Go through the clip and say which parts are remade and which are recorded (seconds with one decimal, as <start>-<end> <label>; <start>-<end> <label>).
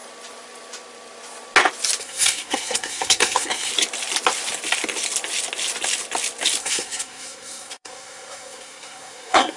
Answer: 0.0-2.0 recorded; 2.0-3.7 remade; 3.7-6.6 recorded; 6.6-9.6 remade